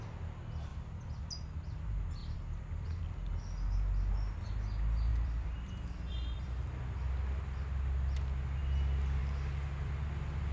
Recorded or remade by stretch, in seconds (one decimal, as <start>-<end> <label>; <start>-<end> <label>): 0.0-2.2 recorded; 2.2-3.0 remade; 3.0-5.1 recorded; 5.1-6.8 remade; 6.8-10.5 recorded